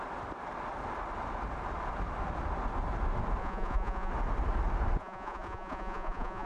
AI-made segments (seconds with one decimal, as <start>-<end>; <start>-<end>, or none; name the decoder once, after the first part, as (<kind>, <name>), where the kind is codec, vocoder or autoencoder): 3.4-4.1 (vocoder, Vocos); 5.0-6.5